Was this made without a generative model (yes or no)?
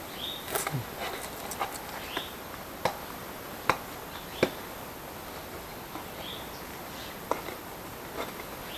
yes